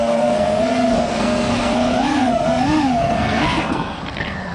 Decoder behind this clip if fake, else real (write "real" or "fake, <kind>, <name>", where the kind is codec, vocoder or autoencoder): fake, codec, SNAC